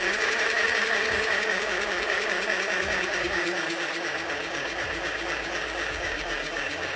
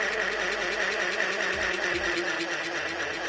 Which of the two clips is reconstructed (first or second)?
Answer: first